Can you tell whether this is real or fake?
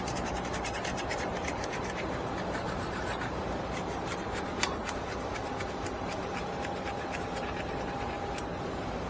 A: fake